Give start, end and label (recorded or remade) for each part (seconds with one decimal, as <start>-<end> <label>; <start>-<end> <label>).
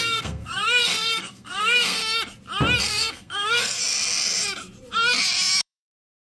0.0-2.0 remade; 2.0-2.8 recorded; 2.8-3.8 remade; 3.8-5.6 recorded; 5.6-6.3 remade